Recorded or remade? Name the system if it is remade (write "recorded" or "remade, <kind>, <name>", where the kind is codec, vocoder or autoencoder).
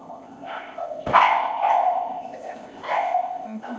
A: remade, codec, ZipCodec